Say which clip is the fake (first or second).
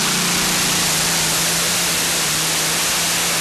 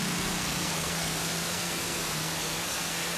second